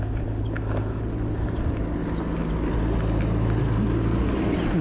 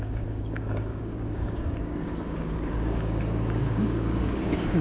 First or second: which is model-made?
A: second